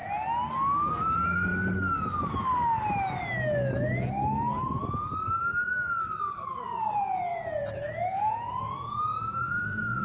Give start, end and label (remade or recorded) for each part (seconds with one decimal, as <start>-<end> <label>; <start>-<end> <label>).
0.0-0.9 recorded; 0.9-1.5 remade; 1.5-6.6 recorded; 6.6-10.0 remade